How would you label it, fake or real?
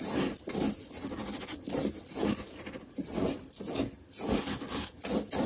real